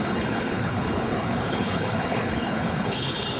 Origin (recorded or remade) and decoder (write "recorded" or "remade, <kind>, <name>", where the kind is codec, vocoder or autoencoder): remade, codec, HILCodec